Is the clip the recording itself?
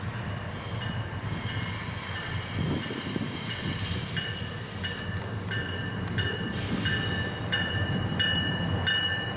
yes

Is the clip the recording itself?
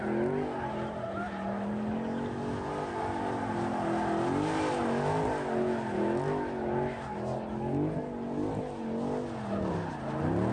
yes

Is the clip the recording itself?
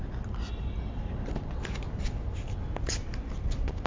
yes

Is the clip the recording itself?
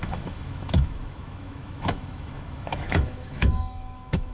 no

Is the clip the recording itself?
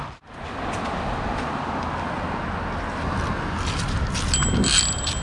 yes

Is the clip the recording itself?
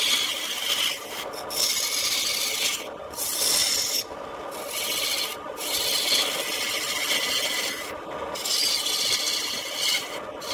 yes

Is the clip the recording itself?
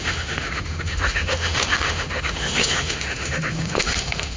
no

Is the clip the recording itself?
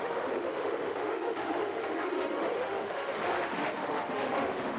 no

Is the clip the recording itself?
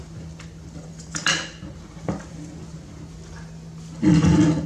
yes